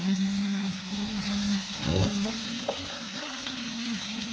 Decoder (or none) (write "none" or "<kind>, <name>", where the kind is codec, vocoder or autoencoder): codec, SNAC